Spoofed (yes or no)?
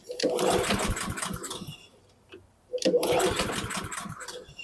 no